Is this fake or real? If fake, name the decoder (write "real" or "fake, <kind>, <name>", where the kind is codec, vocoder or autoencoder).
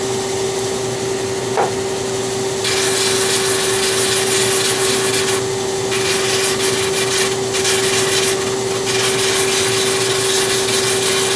real